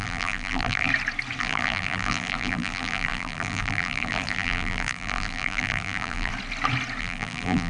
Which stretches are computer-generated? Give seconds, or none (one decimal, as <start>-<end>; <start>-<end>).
0.0-0.9; 1.4-6.3; 7.0-7.7